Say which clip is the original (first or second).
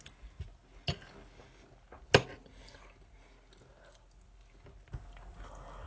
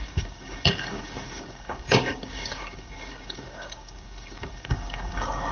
first